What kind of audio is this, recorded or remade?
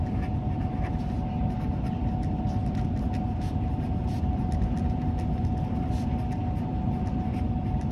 recorded